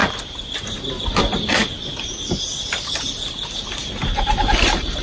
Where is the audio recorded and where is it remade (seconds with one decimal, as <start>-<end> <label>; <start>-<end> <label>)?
0.0-5.0 recorded